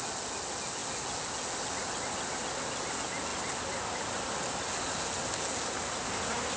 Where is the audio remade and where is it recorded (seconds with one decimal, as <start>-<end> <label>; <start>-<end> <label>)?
0.0-6.6 recorded